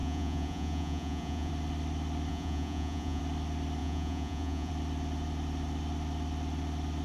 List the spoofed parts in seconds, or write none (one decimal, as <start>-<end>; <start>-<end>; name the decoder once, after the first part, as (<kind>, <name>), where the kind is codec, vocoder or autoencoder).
0.0-1.5 (vocoder, Vocos); 2.3-3.2; 3.8-4.7